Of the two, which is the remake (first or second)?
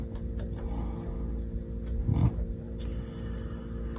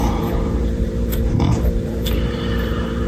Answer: second